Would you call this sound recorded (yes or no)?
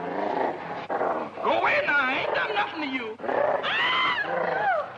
yes